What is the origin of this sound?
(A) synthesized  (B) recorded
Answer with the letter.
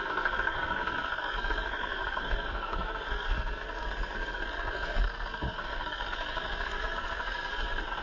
A